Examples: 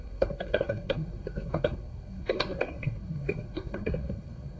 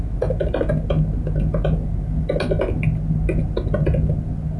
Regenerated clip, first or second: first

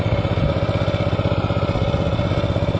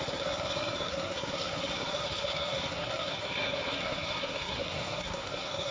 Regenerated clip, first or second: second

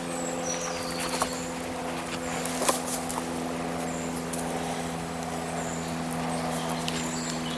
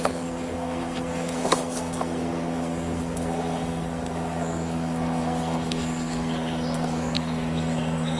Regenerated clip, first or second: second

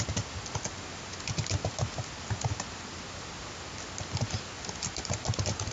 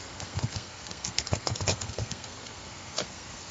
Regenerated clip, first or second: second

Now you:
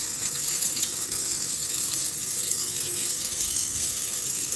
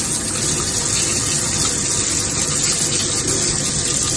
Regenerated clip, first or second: first